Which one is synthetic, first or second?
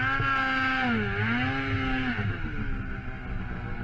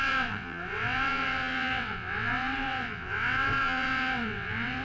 second